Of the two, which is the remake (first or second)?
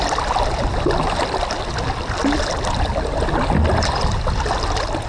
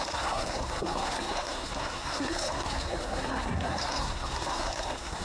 second